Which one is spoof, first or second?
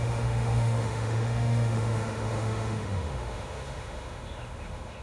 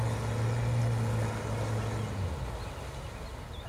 first